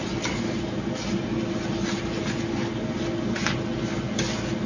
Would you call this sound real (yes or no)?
yes